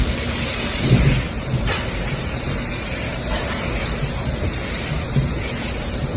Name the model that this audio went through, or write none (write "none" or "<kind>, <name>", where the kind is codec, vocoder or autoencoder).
vocoder, BigVGAN v2